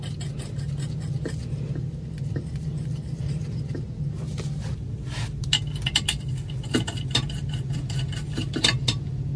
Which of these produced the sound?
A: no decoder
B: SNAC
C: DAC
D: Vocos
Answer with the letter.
A